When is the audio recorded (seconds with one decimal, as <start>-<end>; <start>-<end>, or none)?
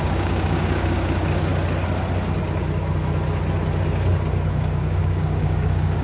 1.5-4.5